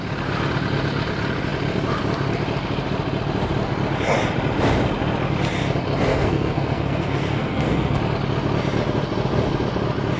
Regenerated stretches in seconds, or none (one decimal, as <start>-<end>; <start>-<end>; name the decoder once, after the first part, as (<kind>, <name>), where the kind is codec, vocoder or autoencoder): 6.1-8.0 (codec, SNAC)